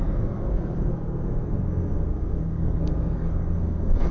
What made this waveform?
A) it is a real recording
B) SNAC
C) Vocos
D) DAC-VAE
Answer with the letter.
B